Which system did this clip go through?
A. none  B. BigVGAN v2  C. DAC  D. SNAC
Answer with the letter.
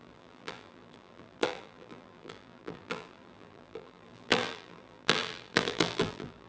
B